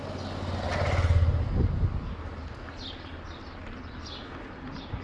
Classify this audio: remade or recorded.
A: recorded